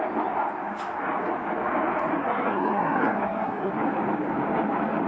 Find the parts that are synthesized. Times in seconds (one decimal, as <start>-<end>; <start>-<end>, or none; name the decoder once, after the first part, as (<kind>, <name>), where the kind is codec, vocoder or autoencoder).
2.2-3.7 (codec, SNAC)